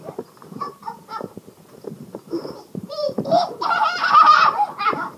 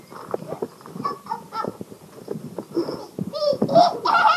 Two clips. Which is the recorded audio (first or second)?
second